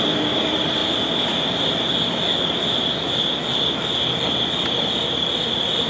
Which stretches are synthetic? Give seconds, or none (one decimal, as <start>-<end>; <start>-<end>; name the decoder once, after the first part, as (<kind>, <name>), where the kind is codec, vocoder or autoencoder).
none